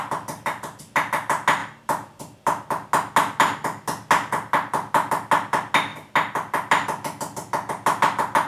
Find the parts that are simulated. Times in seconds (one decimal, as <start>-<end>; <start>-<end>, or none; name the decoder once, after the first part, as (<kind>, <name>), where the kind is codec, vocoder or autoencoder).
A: none